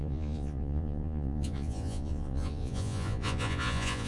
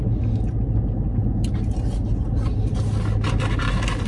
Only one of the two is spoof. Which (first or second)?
first